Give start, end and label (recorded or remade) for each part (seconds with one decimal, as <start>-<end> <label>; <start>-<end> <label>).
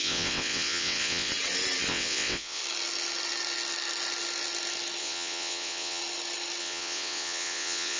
0.0-1.3 remade; 1.3-1.9 recorded; 1.9-2.6 remade; 2.6-5.0 recorded; 5.0-6.0 remade; 6.0-6.6 recorded; 6.6-8.0 remade